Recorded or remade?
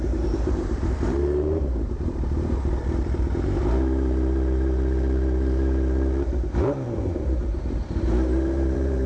remade